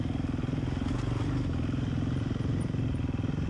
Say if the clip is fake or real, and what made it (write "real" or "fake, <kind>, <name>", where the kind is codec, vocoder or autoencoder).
real